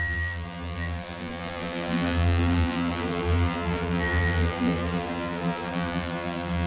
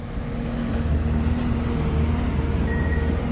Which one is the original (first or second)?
second